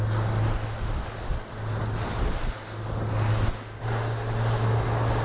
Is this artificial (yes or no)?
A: no